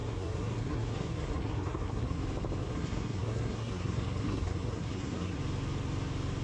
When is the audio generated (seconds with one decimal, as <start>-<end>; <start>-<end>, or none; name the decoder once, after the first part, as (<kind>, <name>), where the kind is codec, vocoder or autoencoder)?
0.0-2.2 (codec, SNAC); 2.6-5.4